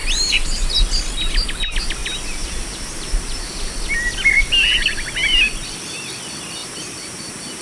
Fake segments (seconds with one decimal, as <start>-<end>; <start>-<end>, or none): 0.0-0.7; 2.0-3.7; 6.6-7.6